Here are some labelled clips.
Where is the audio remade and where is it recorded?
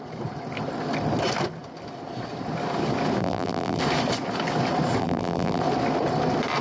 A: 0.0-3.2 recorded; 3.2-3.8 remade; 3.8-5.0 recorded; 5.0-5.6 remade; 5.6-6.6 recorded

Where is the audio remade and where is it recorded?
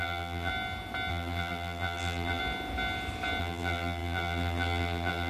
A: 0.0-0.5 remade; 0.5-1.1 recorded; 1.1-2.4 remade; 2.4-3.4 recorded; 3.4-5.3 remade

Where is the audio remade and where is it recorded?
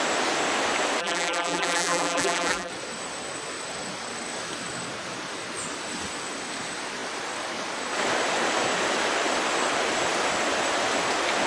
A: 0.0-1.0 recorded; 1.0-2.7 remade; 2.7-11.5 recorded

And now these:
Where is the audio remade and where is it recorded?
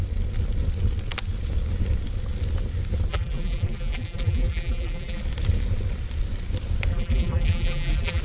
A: 0.0-3.1 recorded; 3.1-5.2 remade; 5.2-6.9 recorded; 6.9-8.2 remade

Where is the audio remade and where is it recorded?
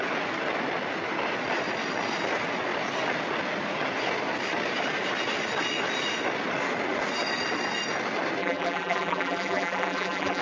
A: 0.0-8.4 recorded; 8.4-10.4 remade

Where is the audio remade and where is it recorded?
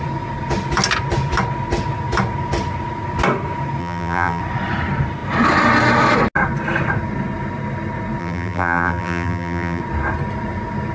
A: 0.0-3.8 recorded; 3.8-4.4 remade; 4.4-8.2 recorded; 8.2-9.8 remade; 9.8-10.9 recorded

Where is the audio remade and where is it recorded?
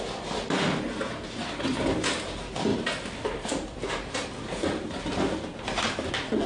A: 0.0-2.7 recorded; 2.7-6.1 remade; 6.1-6.5 recorded